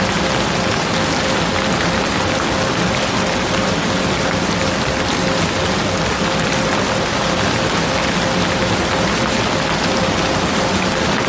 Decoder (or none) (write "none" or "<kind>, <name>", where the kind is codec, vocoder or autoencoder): none